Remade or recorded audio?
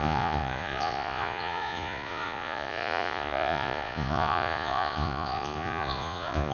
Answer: remade